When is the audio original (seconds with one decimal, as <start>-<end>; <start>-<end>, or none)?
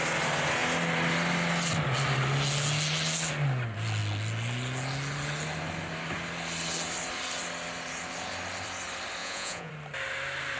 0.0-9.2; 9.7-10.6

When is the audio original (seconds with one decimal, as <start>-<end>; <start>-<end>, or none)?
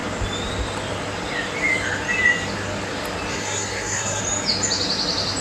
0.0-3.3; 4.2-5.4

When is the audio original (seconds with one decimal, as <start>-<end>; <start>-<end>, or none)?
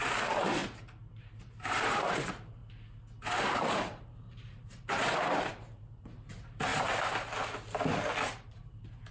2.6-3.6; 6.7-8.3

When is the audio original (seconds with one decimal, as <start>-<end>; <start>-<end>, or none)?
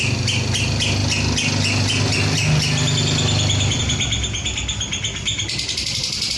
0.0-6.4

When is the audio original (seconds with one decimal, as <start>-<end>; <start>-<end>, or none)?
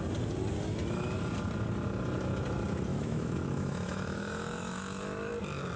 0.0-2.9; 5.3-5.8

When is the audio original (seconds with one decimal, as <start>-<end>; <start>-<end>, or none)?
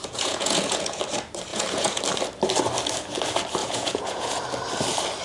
1.0-1.5; 2.0-3.6; 4.4-5.2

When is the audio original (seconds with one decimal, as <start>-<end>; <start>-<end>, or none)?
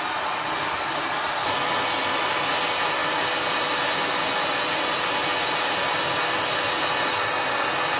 0.0-8.0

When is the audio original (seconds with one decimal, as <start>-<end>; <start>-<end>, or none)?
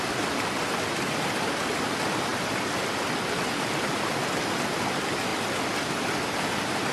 0.0-6.9